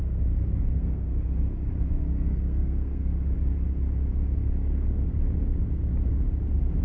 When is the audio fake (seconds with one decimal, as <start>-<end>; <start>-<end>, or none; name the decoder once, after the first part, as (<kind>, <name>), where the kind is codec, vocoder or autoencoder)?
0.0-1.1 (codec, SNAC); 1.9-3.1